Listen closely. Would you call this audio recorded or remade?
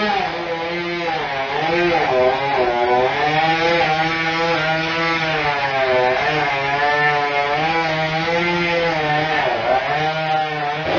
recorded